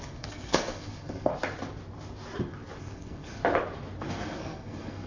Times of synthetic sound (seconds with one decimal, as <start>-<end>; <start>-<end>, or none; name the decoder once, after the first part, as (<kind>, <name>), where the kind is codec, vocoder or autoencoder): 0.0-1.3 (codec, SNAC); 2.8-3.4; 4.0-5.1